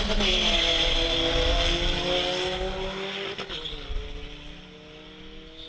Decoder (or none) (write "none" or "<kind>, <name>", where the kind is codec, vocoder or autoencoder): none